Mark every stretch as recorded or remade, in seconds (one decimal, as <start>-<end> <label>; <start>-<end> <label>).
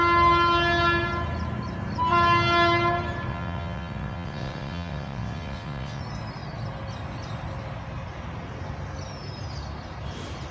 0.0-3.3 recorded; 3.3-6.0 remade; 6.0-10.5 recorded